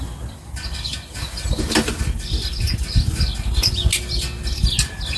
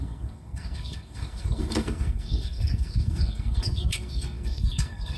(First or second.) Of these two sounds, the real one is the first